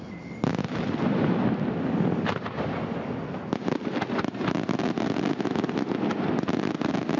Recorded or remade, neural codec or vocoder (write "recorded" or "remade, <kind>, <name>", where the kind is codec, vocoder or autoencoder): recorded